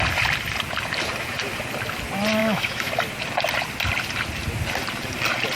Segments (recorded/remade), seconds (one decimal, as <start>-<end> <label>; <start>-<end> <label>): 0.0-2.4 recorded; 2.4-2.9 remade; 2.9-5.6 recorded